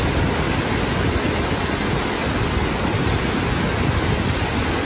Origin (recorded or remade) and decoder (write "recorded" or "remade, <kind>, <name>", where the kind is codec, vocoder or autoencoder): recorded